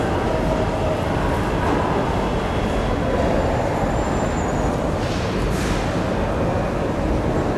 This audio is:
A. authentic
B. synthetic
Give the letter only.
A